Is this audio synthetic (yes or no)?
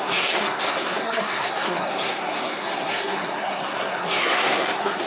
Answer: yes